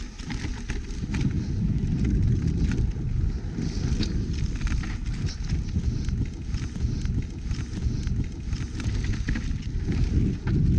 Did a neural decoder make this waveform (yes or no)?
no